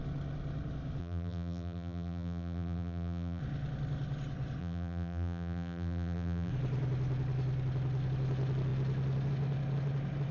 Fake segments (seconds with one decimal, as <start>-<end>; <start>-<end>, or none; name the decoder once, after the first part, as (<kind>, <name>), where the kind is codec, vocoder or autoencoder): 1.0-3.4 (vocoder, BigVGAN v2); 4.6-6.5